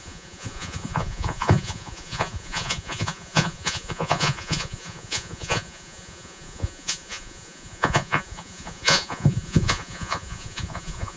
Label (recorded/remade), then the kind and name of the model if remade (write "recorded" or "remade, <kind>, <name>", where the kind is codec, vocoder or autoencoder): remade, vocoder, Vocos